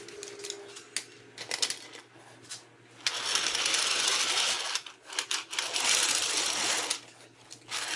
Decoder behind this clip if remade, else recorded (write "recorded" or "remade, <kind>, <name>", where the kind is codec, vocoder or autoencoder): recorded